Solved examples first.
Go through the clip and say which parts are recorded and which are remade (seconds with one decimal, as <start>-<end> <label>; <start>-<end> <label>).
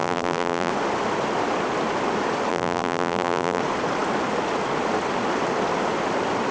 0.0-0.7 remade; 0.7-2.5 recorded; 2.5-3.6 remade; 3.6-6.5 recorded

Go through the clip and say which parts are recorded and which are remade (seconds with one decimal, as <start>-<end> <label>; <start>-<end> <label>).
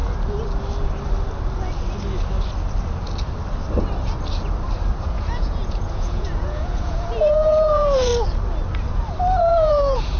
0.0-5.0 recorded; 5.0-8.1 remade; 8.1-9.4 recorded; 9.4-10.2 remade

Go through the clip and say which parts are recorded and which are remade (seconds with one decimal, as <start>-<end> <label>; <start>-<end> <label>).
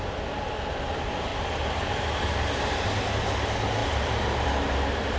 0.0-1.3 recorded; 1.3-2.8 remade; 2.8-3.8 recorded; 3.8-5.2 remade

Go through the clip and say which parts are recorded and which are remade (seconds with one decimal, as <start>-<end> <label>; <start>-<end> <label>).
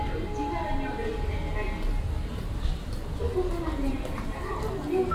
0.0-1.0 remade; 1.0-2.0 recorded; 2.0-3.2 remade; 3.2-3.9 recorded; 3.9-5.1 remade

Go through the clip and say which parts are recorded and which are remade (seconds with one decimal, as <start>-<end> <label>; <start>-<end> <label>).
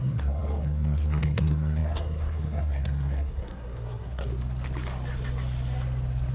0.0-4.3 remade; 4.3-6.3 recorded